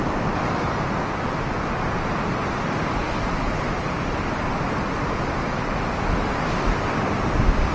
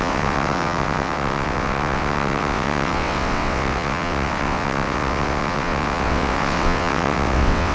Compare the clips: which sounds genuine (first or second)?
first